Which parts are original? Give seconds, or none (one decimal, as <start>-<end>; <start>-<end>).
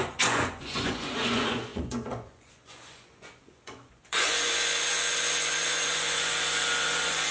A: none